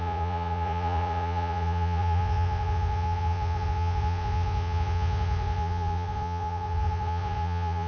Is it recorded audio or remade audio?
remade